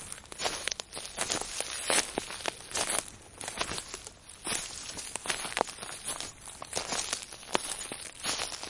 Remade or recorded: recorded